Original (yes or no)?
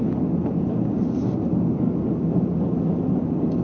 yes